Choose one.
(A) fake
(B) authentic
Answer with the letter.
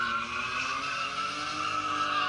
B